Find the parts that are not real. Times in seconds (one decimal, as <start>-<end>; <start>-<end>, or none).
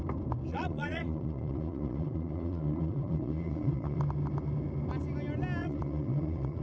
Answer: 0.5-4.0; 5.6-6.6